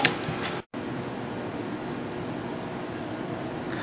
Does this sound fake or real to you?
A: real